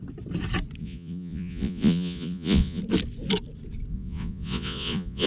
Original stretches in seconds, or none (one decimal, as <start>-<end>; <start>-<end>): 0.0-0.8; 2.8-3.9